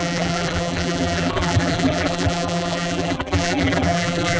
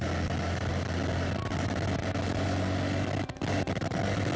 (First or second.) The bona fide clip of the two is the second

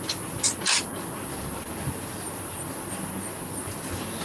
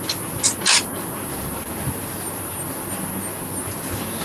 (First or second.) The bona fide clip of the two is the second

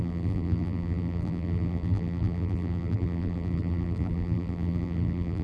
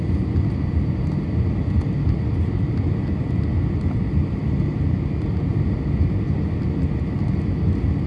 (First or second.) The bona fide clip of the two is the second